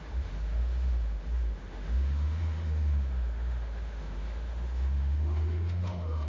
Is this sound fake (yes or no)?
yes